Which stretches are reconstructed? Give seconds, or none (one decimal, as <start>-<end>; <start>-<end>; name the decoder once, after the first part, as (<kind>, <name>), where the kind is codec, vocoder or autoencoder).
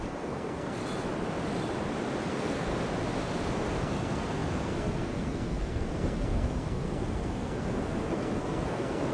0.0-0.8 (codec, SNAC); 2.3-2.7; 3.8-9.1